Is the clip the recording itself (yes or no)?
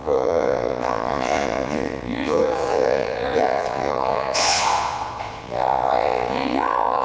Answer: no